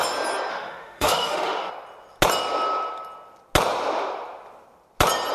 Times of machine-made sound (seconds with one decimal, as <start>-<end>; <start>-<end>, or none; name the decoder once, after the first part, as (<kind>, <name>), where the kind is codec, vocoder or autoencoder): 0.5-1.7 (autoencoder, DAC-VAE)